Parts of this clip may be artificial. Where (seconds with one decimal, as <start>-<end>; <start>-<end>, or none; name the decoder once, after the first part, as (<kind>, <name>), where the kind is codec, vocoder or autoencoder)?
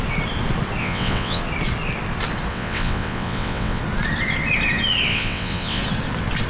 0.8-1.4 (vocoder, WaveNeXt); 2.5-3.8; 5.1-5.8